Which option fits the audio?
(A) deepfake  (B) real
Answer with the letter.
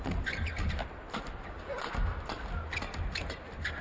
B